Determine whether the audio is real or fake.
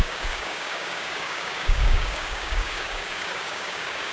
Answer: fake